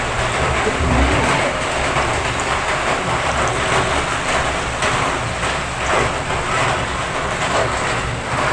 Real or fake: real